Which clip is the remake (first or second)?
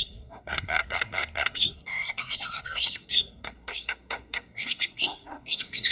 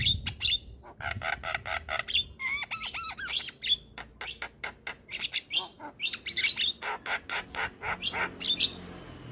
first